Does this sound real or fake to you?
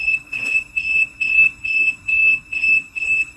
fake